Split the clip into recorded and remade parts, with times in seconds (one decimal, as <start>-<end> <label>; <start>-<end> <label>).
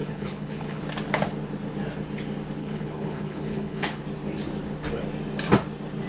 0.0-0.8 remade; 0.8-2.6 recorded; 2.6-4.0 remade; 4.0-6.1 recorded